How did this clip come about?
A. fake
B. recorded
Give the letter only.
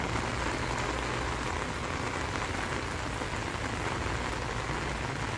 B